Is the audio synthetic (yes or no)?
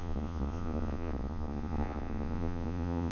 yes